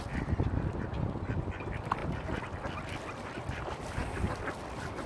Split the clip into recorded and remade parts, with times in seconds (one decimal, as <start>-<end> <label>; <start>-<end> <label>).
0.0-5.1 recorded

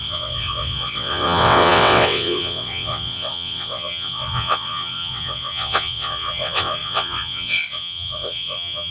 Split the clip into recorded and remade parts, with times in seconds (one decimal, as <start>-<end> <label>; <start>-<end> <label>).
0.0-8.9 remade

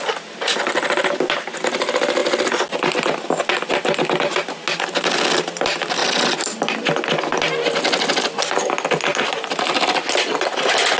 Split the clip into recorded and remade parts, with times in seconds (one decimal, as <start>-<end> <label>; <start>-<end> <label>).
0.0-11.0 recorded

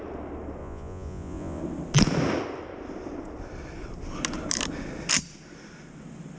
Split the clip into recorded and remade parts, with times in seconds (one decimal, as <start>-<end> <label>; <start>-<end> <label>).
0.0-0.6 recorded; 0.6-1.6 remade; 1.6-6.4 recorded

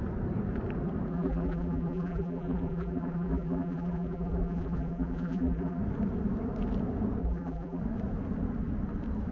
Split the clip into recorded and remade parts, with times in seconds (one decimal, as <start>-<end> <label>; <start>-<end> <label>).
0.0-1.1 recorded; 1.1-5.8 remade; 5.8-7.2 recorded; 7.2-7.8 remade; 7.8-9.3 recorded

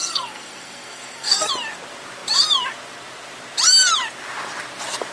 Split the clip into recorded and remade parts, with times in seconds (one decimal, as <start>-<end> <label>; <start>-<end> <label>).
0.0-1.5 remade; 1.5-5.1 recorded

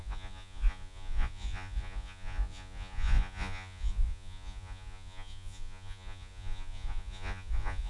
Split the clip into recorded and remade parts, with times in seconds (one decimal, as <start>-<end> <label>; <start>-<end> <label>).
0.0-7.9 remade